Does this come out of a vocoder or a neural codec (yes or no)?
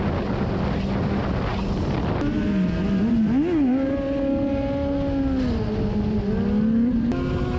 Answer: no